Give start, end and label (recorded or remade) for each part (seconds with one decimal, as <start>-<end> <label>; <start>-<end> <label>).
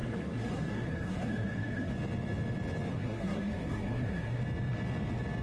0.0-1.9 remade; 1.9-2.9 recorded; 2.9-4.4 remade; 4.4-5.4 recorded